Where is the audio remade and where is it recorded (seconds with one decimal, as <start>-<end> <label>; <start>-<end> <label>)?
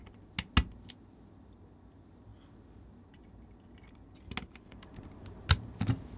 0.0-6.2 recorded